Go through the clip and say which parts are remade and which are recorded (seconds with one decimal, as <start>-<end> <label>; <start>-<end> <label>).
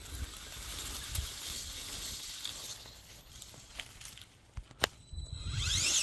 0.0-2.6 recorded; 2.6-3.3 remade; 3.3-6.0 recorded